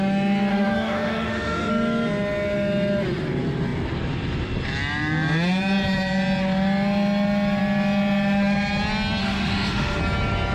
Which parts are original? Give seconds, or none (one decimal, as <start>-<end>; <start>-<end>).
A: 0.0-0.5; 1.7-9.2; 10.0-10.5